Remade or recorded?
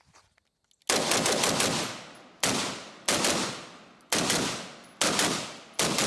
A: recorded